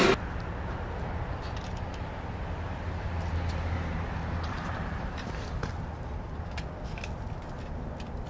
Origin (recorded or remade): recorded